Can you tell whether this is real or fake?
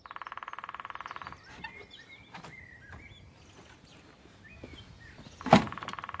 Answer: real